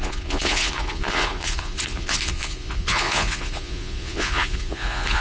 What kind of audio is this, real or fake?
fake